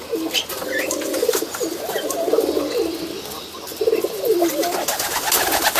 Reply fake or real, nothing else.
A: real